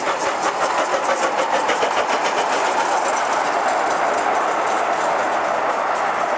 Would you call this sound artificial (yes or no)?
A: no